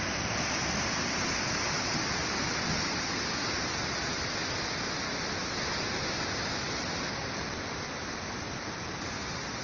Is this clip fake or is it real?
real